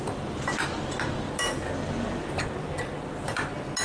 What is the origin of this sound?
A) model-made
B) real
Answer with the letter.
B